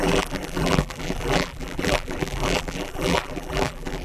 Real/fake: fake